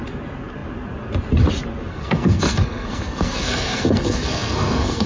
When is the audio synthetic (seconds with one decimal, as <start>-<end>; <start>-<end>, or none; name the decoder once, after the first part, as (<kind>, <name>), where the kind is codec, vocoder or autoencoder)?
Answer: 1.9-5.1 (codec, SNAC)